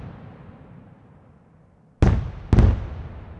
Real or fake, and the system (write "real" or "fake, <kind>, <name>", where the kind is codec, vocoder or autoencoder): real